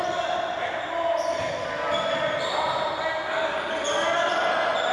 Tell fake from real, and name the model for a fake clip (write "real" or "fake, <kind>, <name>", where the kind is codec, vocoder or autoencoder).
real